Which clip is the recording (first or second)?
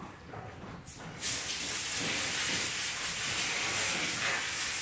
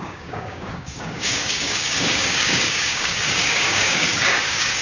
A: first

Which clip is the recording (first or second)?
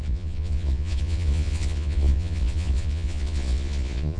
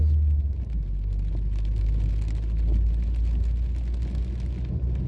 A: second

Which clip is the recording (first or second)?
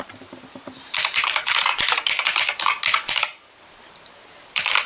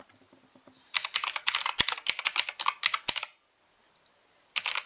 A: second